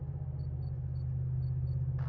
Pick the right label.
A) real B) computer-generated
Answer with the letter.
A